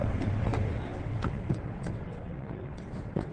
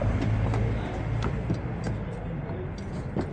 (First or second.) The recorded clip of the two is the second